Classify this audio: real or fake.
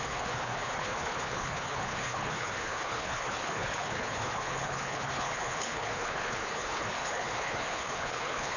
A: fake